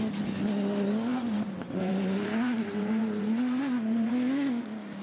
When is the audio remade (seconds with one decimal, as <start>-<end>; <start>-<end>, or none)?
1.1-4.1